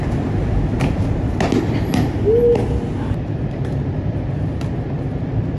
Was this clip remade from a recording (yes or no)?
no